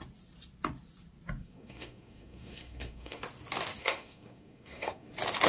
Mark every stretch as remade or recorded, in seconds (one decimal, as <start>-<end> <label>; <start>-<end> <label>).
0.0-1.4 recorded; 1.4-3.2 remade; 3.2-3.8 recorded; 3.8-5.1 remade; 5.1-5.5 recorded

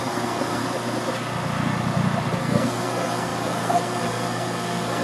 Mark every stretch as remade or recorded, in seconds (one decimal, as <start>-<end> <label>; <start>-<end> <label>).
0.0-0.6 remade; 0.6-2.4 recorded; 2.4-5.0 remade

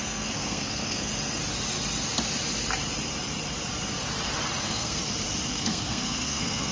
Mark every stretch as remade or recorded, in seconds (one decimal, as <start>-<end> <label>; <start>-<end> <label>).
0.0-1.1 remade; 1.1-4.6 recorded; 4.6-5.0 remade; 5.0-5.5 recorded; 5.5-6.7 remade

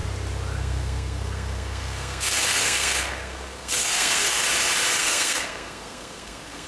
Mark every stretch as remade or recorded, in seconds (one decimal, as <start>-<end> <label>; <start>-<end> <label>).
0.0-0.6 recorded; 0.6-4.4 remade; 4.4-5.0 recorded; 5.0-6.7 remade

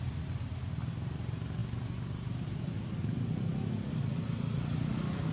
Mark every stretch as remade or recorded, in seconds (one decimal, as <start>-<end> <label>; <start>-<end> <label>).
0.0-5.3 recorded

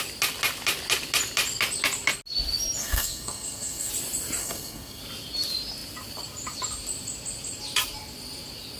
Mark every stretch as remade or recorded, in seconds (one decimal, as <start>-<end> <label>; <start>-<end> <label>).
0.0-2.8 recorded; 2.8-3.9 remade; 3.9-4.4 recorded; 4.4-5.0 remade; 5.0-8.8 recorded

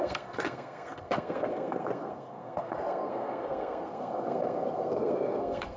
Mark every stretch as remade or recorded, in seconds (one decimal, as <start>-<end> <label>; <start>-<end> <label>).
0.0-5.8 remade

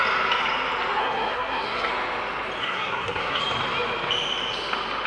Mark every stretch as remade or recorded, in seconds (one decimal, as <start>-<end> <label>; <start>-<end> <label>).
0.0-1.0 recorded; 1.0-1.9 remade; 1.9-2.6 recorded; 2.6-3.4 remade; 3.4-5.1 recorded